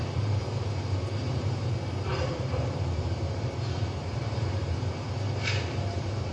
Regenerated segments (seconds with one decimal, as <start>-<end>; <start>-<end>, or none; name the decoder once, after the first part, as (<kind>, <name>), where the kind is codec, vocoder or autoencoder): 0.0-6.3 (vocoder, BigVGAN v2)